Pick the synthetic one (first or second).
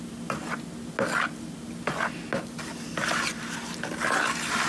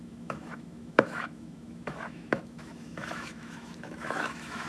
second